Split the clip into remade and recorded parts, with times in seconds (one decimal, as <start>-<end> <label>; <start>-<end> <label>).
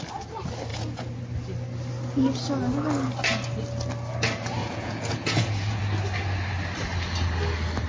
0.0-0.7 recorded; 0.7-1.2 remade; 1.2-4.6 recorded; 4.6-5.8 remade; 5.8-7.9 recorded